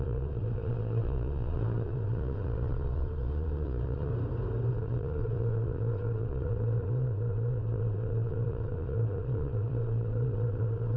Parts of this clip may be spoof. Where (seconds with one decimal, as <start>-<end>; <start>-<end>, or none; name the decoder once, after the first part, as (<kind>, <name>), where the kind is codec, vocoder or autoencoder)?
0.0-4.1 (vocoder, Vocos); 4.7-11.0